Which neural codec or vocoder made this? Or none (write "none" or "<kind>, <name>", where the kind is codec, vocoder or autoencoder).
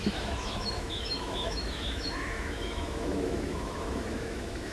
autoencoder, DAC-VAE